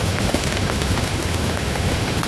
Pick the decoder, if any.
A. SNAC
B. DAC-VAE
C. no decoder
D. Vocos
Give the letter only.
B